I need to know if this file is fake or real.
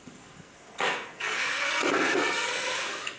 fake